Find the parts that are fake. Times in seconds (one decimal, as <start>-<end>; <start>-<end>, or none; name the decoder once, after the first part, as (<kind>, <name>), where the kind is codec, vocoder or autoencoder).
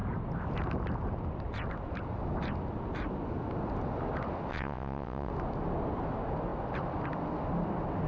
4.5-5.3 (vocoder, WaveNeXt)